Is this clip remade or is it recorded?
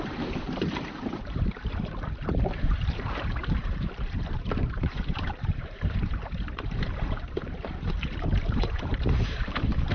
remade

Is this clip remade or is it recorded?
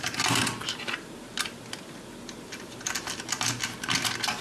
recorded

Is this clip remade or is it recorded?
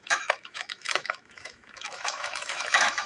remade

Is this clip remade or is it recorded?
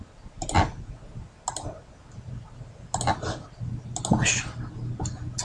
recorded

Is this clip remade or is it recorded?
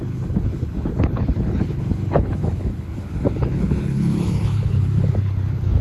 remade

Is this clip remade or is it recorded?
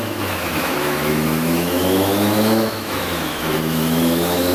remade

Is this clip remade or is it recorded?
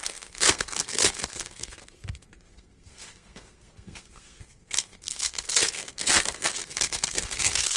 remade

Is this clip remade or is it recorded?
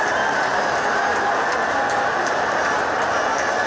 recorded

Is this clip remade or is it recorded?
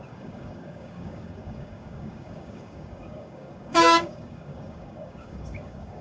remade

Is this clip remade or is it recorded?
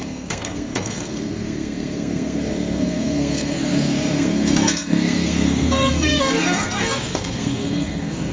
remade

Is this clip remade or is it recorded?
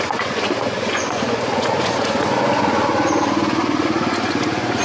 remade